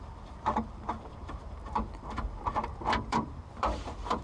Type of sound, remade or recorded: remade